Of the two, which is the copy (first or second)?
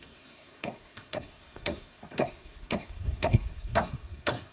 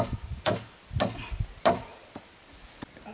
first